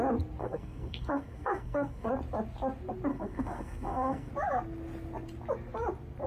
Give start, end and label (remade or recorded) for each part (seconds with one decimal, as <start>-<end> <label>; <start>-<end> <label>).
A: 0.0-0.4 recorded; 0.4-2.1 remade; 2.1-3.1 recorded; 3.1-4.3 remade; 4.3-6.3 recorded